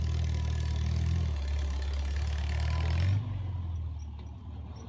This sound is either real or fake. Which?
real